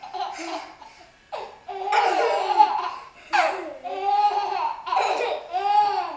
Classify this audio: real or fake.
real